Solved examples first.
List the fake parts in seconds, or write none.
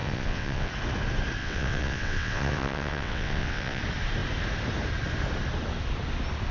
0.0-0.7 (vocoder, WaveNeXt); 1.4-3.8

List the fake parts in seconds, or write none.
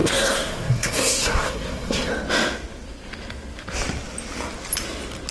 0.0-2.1 (codec, SNAC)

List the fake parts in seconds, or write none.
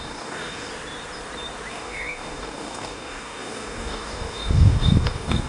0.0-0.7 (codec, DAC); 1.7-5.5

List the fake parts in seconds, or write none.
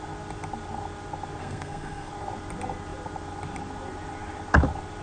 1.4-2.1 (codec, SNAC)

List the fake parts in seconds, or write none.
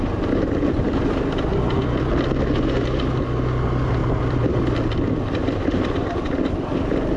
1.5-2.4 (vocoder, BigVGAN v2); 4.0-4.6; 5.4-6.3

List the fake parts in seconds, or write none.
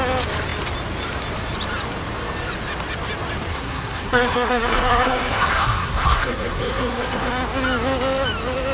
3.5-7.3 (codec, SNAC)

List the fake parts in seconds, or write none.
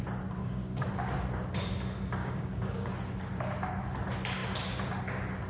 0.4-0.9 (codec, DAC); 2.2-2.9